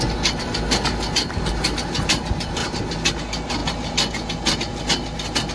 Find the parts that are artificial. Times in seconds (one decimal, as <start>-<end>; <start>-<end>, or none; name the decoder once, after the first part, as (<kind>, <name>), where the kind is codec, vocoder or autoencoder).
none